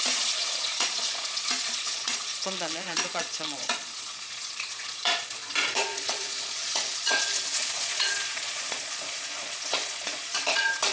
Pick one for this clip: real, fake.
fake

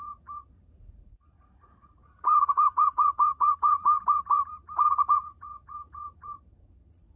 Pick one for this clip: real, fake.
fake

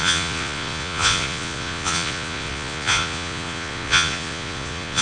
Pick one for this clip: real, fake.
fake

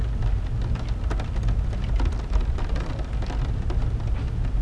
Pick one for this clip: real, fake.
real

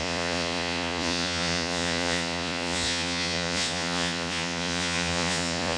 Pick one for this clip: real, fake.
fake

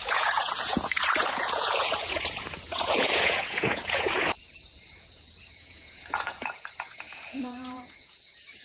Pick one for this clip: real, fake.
fake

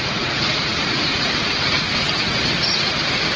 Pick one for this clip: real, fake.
fake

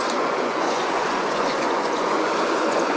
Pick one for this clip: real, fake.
fake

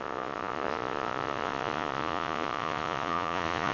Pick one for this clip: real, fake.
fake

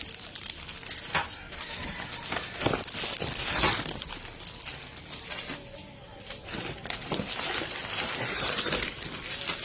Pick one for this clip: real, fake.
real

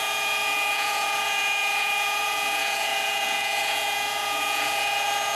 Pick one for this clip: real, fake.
fake